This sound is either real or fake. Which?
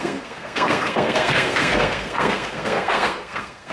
fake